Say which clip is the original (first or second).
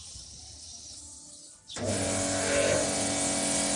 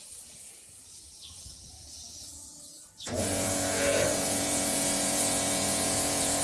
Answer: first